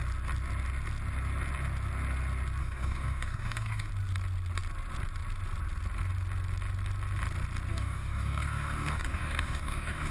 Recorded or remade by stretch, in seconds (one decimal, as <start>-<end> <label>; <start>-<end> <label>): 0.0-2.6 recorded; 2.6-3.9 remade; 3.9-7.7 recorded; 7.7-10.1 remade